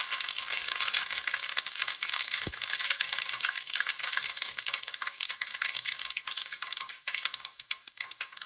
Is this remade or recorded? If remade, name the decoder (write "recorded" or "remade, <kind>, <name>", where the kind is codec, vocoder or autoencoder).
remade, codec, DAC